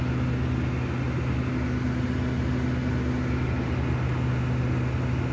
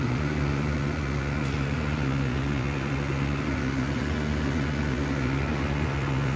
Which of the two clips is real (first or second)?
first